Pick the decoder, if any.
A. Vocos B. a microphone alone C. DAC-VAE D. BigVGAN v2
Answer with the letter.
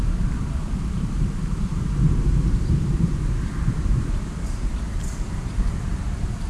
D